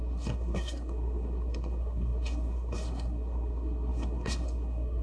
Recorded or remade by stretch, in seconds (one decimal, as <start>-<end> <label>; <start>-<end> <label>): 0.0-5.0 remade